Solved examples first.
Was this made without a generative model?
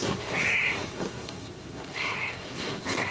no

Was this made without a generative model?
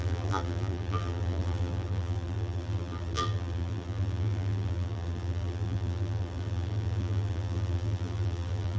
no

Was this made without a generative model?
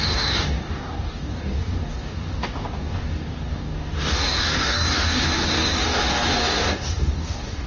no